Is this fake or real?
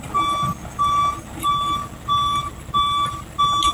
real